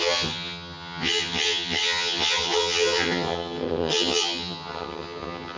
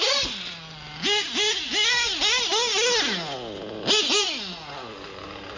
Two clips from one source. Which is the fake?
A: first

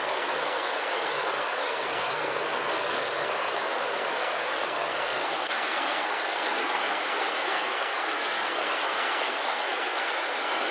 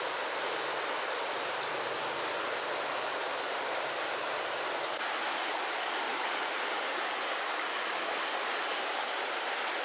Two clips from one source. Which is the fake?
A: first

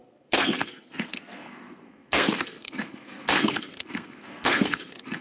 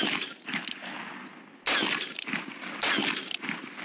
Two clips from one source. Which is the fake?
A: first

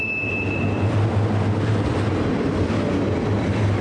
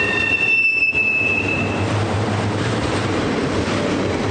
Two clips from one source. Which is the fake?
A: second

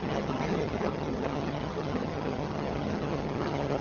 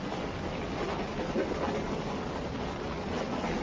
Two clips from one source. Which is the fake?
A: first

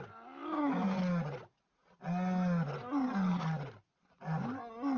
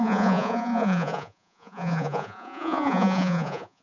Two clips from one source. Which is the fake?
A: second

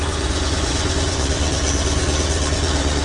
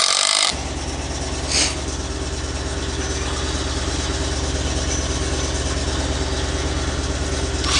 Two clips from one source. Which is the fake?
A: first